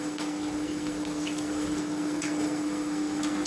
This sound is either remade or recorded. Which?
remade